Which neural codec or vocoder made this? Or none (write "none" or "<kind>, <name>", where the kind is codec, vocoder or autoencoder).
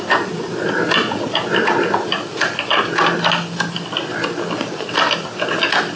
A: none